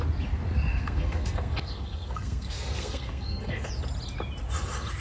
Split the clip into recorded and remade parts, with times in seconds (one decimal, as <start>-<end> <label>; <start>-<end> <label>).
0.0-0.7 recorded; 0.7-3.7 remade; 3.7-5.0 recorded